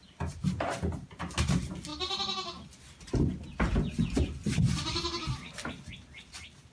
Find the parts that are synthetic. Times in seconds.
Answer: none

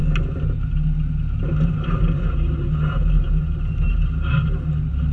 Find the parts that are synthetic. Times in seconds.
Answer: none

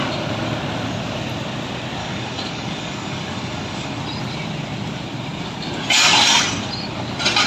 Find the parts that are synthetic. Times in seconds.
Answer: 2.0-4.0

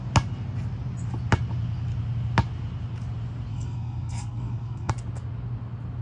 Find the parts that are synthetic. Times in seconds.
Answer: 3.5-4.9